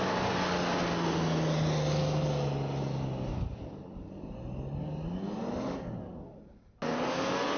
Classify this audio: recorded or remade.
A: recorded